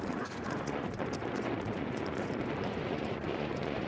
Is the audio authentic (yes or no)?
no